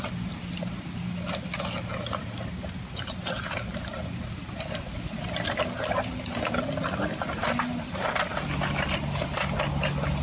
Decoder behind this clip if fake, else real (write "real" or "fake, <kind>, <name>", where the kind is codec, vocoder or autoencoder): real